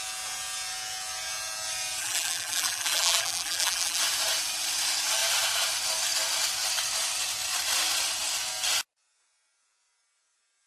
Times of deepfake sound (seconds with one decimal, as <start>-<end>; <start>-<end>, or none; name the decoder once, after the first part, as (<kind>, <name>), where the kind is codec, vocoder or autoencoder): 2.0-4.0 (vocoder, BigVGAN v2)